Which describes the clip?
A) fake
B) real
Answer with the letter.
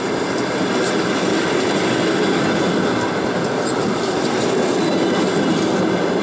B